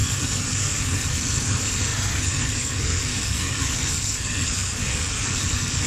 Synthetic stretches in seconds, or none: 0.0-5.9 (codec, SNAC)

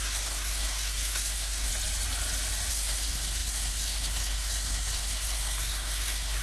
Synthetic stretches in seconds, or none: 0.0-1.7 (codec, SNAC); 2.7-6.4

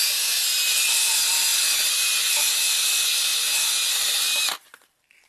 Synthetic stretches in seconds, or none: none

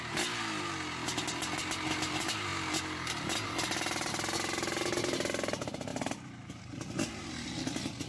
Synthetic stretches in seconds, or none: none

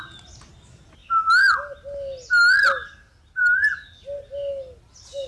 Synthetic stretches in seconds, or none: none